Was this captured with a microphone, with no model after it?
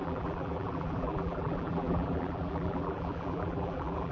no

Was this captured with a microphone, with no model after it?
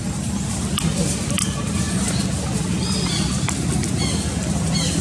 yes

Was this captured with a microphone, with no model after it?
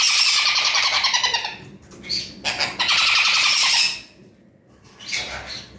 yes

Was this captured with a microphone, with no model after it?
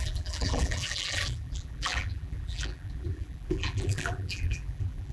no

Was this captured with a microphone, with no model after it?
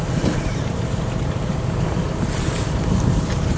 no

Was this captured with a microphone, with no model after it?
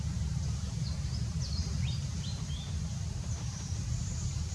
no